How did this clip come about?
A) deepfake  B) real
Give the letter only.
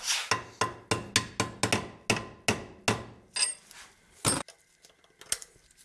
B